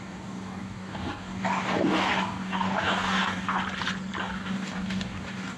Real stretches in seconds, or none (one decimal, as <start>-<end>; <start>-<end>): 3.6-4.2